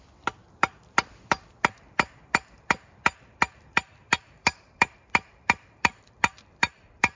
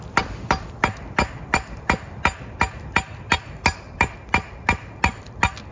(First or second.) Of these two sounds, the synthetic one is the first